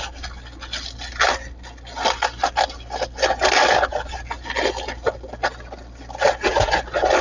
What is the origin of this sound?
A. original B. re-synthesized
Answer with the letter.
A